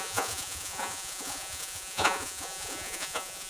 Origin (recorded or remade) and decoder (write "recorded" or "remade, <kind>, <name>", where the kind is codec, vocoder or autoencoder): remade, vocoder, Vocos